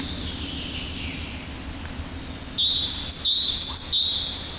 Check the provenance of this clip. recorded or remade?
recorded